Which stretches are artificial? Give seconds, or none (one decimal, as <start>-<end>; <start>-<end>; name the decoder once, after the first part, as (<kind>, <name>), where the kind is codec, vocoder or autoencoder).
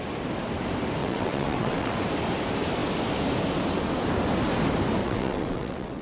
1.0-2.0 (vocoder, WaveNeXt); 5.0-6.0